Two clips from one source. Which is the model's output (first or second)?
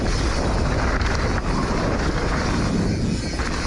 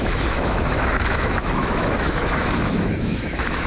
second